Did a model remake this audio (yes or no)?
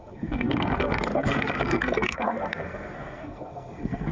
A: yes